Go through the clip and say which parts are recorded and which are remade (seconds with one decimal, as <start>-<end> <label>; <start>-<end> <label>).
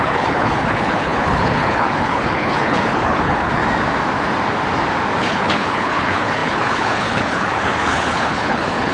0.0-3.6 remade; 3.6-5.2 recorded; 5.2-8.9 remade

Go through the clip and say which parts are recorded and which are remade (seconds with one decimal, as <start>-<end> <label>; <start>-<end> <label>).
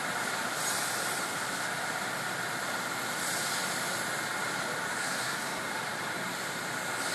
0.0-5.0 recorded; 5.0-5.6 remade; 5.6-7.1 recorded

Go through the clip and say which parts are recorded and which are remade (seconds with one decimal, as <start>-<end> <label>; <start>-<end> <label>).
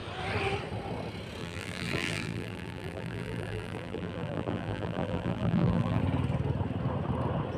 0.0-1.4 recorded; 1.4-6.0 remade; 6.0-7.6 recorded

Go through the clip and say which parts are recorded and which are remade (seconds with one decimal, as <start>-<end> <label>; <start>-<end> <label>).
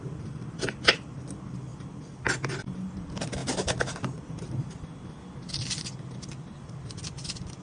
0.0-1.7 remade; 1.7-3.0 recorded; 3.0-3.4 remade; 3.4-5.5 recorded; 5.5-7.6 remade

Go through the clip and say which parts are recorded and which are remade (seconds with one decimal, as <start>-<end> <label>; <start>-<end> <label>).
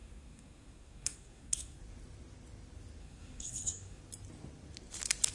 0.0-1.8 remade; 1.8-3.0 recorded; 3.0-4.0 remade; 4.0-5.3 recorded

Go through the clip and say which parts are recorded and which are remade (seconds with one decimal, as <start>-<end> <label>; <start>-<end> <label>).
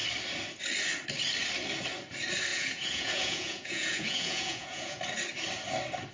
0.0-2.5 recorded; 2.5-5.0 remade; 5.0-6.1 recorded